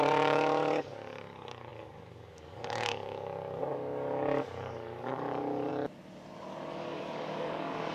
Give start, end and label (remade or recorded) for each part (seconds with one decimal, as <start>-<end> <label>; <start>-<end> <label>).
0.0-5.7 remade; 5.7-6.7 recorded; 6.7-7.9 remade

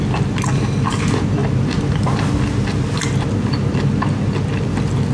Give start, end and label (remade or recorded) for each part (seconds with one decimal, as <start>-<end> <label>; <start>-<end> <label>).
0.0-5.1 recorded

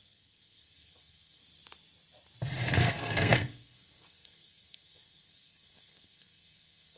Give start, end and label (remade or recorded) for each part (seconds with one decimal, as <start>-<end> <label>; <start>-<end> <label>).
0.0-1.4 remade; 1.4-2.8 recorded; 2.8-7.0 remade